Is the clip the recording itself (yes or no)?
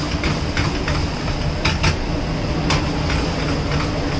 yes